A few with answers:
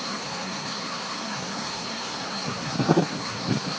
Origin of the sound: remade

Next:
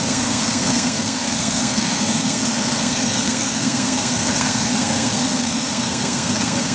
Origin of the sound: remade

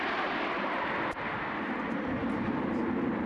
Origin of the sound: recorded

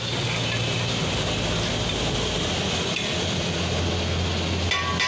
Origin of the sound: recorded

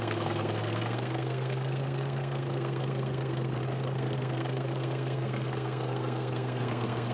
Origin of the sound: remade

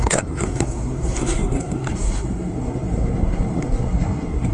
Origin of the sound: remade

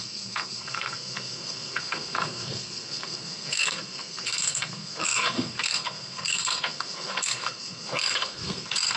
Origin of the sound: remade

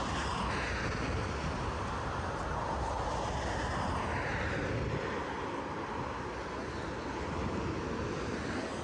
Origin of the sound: recorded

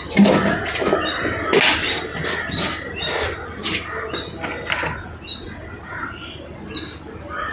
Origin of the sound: recorded